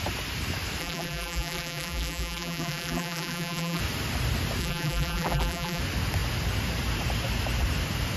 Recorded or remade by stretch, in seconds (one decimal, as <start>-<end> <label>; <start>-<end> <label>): 0.0-0.8 recorded; 0.8-3.8 remade; 3.8-4.6 recorded; 4.6-5.8 remade; 5.8-8.2 recorded